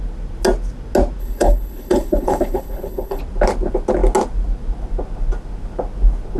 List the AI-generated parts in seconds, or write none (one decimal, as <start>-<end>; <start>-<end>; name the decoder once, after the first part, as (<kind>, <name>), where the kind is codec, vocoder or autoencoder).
1.2-3.2 (codec, HILCodec)